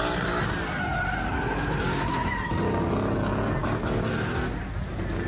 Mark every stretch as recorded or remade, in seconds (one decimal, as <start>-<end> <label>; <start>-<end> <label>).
0.0-5.3 recorded